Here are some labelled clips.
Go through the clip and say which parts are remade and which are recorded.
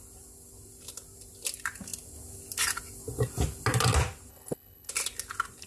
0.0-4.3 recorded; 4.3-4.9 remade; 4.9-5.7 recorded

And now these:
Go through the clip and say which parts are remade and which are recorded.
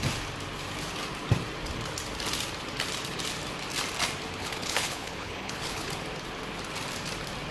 0.0-4.4 recorded; 4.4-5.9 remade; 5.9-7.5 recorded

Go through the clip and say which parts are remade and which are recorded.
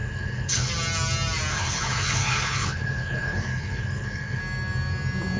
0.0-0.7 remade; 0.7-1.5 recorded; 1.5-4.4 remade; 4.4-5.4 recorded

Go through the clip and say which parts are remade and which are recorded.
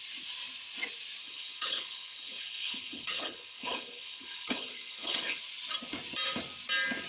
0.0-1.2 recorded; 1.2-5.4 remade; 5.4-7.1 recorded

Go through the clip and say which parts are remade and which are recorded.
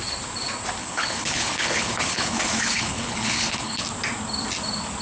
0.0-0.8 recorded; 0.8-3.8 remade; 3.8-5.0 recorded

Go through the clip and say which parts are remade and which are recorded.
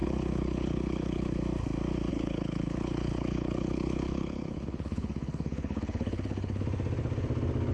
0.0-1.4 remade; 1.4-2.1 recorded; 2.1-6.6 remade; 6.6-7.7 recorded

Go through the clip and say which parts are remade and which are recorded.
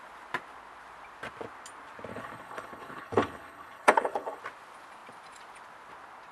0.0-2.1 recorded; 2.1-4.4 remade; 4.4-6.3 recorded